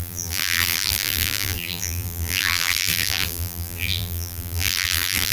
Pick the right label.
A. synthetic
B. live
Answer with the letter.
A